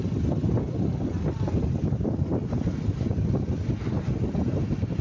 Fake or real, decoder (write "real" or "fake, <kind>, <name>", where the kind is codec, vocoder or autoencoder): real